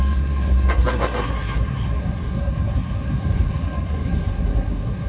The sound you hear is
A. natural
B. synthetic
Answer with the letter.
B